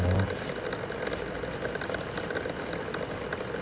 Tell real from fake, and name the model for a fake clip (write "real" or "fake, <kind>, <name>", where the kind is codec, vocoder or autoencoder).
real